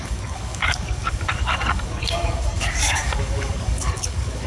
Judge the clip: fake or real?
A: fake